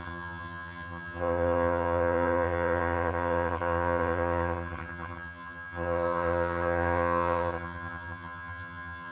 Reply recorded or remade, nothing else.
remade